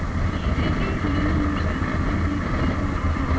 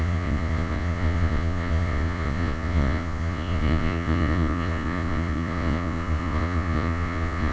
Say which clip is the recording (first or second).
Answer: first